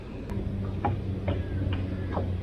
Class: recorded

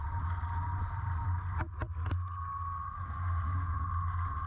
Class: recorded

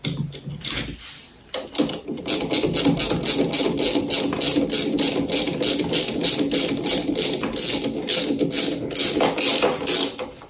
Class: recorded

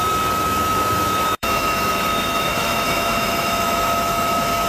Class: remade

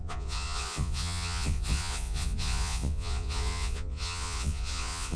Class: remade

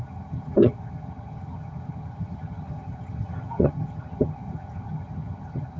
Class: remade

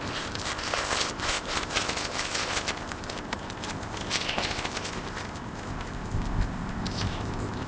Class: remade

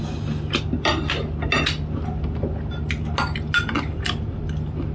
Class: recorded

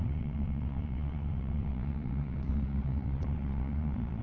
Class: remade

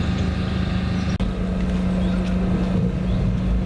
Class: recorded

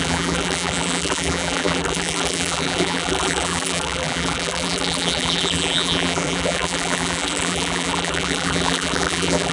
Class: remade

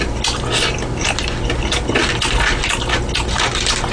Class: recorded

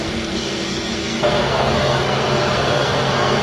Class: remade